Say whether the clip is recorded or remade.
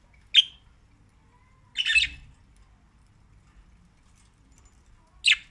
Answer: recorded